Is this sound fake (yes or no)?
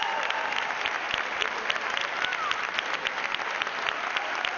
no